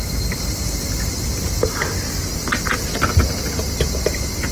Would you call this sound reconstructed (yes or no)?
no